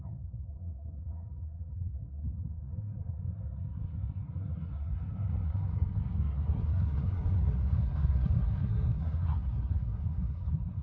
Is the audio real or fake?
fake